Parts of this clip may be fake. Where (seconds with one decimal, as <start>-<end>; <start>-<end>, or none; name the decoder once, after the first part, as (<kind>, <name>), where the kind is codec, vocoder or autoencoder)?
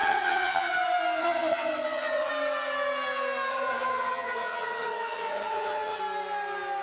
0.0-0.7 (vocoder, HiFi-GAN); 1.2-2.3; 3.5-6.0